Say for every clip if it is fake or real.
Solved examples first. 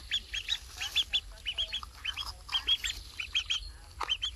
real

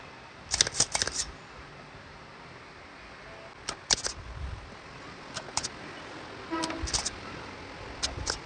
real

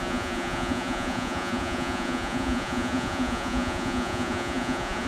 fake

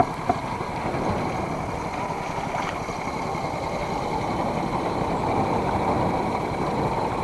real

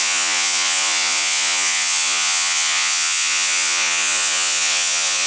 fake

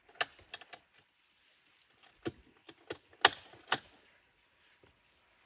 real